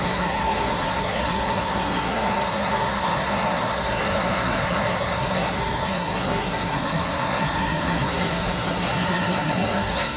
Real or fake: fake